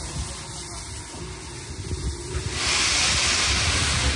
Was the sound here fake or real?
real